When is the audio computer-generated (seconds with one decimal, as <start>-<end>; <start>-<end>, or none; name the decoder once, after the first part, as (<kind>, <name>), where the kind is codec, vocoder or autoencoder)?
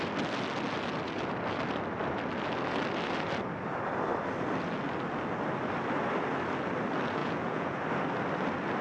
7.2-7.8 (vocoder, Vocos)